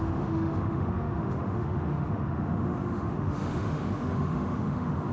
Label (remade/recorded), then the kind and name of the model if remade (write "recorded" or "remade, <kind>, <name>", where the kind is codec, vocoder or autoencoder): remade, autoencoder, DAC-VAE